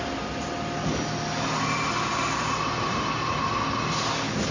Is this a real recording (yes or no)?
yes